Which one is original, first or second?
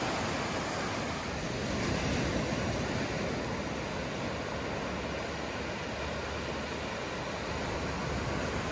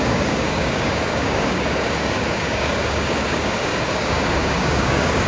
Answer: first